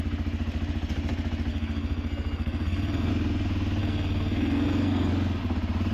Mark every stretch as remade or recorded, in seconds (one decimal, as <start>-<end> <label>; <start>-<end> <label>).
0.0-1.5 recorded; 1.5-3.1 remade; 3.1-3.8 recorded; 3.8-5.1 remade; 5.1-5.9 recorded